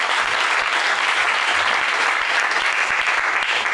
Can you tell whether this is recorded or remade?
recorded